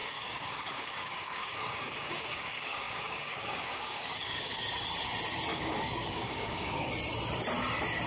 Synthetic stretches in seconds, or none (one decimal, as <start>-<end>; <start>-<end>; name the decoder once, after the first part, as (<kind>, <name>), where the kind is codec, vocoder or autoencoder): 0.0-4.6 (codec, DAC); 5.5-6.9